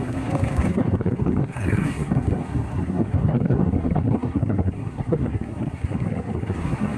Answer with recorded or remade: remade